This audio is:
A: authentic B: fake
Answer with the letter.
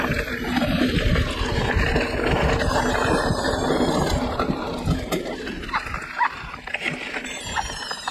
A